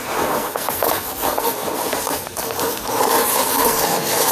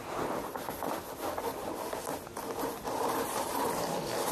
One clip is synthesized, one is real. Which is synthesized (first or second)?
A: first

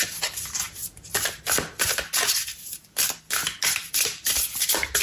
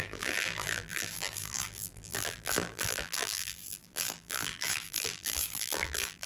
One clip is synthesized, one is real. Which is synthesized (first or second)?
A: second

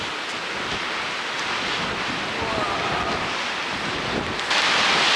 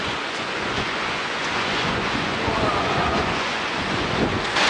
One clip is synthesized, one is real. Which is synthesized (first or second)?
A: second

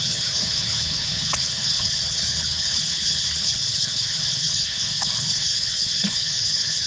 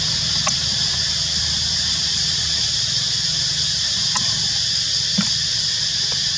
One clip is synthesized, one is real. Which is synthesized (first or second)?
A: first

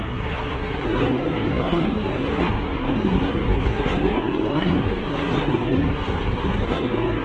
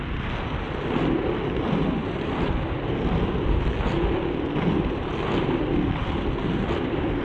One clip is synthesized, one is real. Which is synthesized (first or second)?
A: first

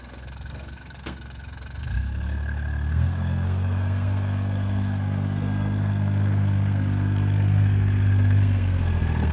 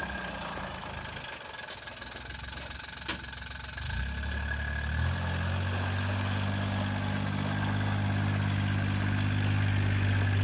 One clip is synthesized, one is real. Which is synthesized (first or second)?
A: first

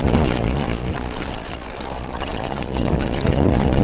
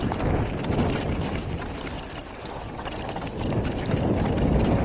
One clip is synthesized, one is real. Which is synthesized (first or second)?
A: first